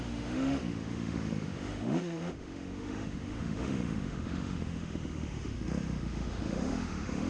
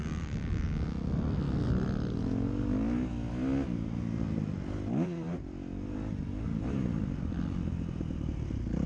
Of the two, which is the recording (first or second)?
second